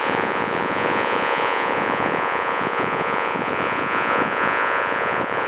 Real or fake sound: fake